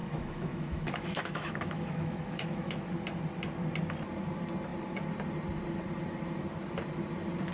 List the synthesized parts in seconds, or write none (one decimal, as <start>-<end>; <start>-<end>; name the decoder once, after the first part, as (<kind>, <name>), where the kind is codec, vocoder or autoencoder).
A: 0.0-2.9 (autoencoder, DAC-VAE)